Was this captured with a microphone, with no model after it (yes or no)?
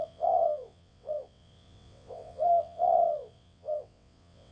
no